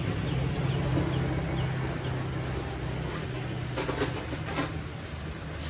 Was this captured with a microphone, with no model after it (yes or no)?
yes